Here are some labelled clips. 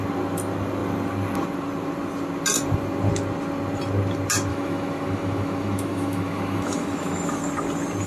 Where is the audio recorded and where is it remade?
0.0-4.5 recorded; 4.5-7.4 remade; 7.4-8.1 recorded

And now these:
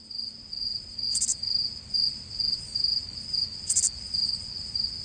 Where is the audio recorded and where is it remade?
0.0-5.0 recorded

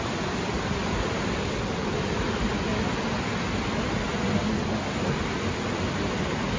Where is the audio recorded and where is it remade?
0.0-6.6 recorded

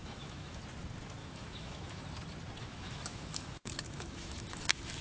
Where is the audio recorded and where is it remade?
0.0-0.6 remade; 0.6-1.2 recorded; 1.2-2.0 remade; 2.0-2.6 recorded; 2.6-5.0 remade

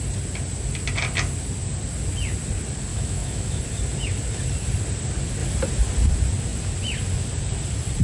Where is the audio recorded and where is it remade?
0.0-2.9 recorded; 2.9-3.6 remade; 3.6-8.0 recorded

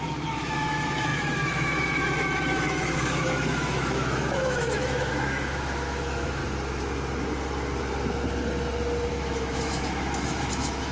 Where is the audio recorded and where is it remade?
0.0-6.4 remade; 6.4-9.1 recorded; 9.1-10.9 remade

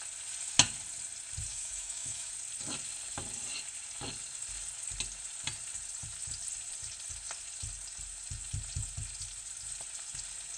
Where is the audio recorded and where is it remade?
0.0-1.5 recorded; 1.5-2.3 remade; 2.3-10.6 recorded

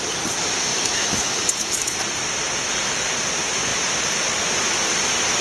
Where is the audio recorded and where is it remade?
0.0-0.7 recorded; 0.7-2.0 remade; 2.0-5.4 recorded